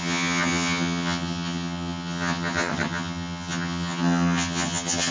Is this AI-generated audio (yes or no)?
yes